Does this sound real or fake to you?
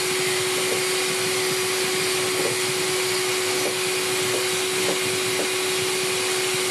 real